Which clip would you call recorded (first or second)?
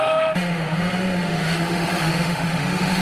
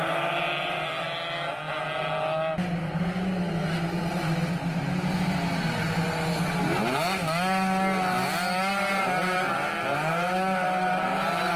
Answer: second